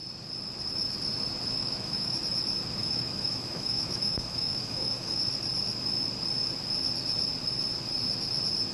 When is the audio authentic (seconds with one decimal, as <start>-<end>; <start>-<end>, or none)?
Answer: 0.0-1.6; 2.2-2.8; 5.2-8.7